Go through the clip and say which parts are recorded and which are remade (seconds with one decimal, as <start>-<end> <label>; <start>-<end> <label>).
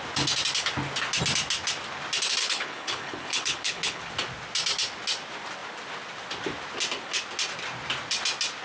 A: 0.0-2.4 recorded; 2.4-4.0 remade; 4.0-8.6 recorded